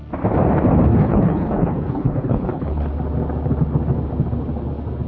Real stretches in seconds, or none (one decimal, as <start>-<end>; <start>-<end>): 0.0-0.9; 2.9-5.1